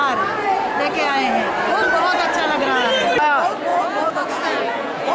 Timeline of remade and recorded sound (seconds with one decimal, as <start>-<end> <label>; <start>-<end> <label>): 0.0-3.7 recorded; 3.7-5.1 remade